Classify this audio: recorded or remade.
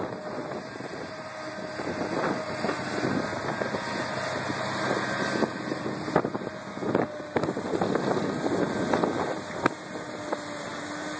recorded